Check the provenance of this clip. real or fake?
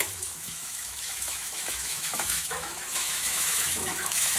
fake